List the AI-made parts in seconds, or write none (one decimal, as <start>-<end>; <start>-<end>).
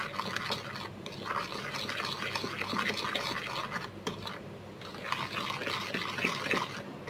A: none